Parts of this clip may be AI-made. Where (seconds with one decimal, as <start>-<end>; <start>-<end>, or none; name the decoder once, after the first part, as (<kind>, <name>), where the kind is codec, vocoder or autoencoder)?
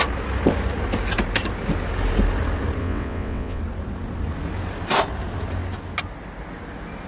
2.8-3.6 (vocoder, WaveNeXt)